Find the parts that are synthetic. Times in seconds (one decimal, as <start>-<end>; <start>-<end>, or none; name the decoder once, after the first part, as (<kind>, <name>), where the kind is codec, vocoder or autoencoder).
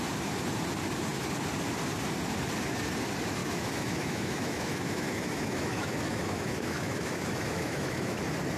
3.4-8.2 (autoencoder, DAC-VAE)